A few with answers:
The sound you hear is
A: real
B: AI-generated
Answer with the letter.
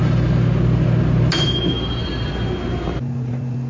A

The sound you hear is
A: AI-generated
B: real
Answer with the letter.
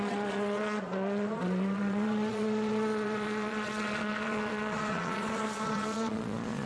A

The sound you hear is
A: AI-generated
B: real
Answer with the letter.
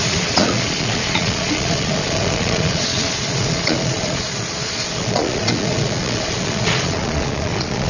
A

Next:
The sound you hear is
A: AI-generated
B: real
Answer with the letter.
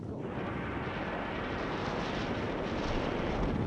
B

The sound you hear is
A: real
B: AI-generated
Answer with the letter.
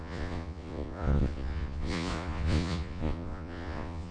B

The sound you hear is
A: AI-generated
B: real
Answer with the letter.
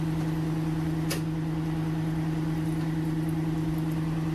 B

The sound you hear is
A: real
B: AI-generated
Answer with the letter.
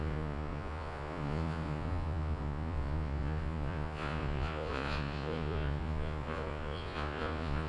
B